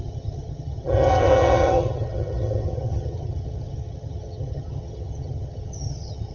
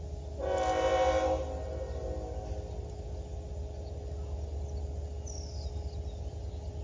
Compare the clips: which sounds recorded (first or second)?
second